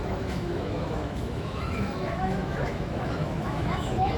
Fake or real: fake